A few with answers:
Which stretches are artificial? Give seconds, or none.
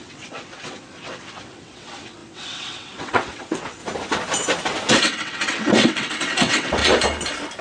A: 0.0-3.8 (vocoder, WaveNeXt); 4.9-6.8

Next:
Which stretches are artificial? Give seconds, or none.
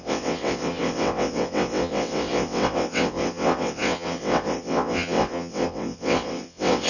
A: 0.0-6.9 (vocoder, WaveNeXt)